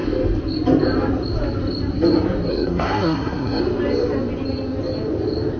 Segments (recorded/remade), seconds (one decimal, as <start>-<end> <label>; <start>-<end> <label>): 0.0-2.5 recorded; 2.5-3.6 remade; 3.6-5.6 recorded